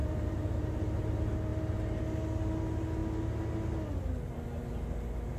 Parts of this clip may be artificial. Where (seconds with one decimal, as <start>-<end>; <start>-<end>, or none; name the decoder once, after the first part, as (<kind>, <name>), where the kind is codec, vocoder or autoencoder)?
0.0-0.8 (vocoder, BigVGAN v2)